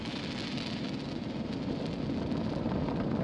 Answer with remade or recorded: remade